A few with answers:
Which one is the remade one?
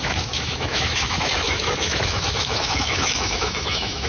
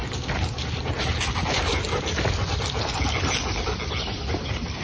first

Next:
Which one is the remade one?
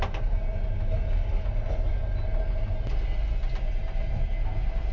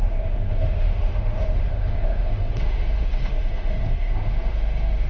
second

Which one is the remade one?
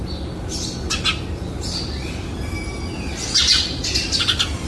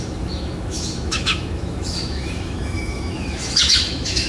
second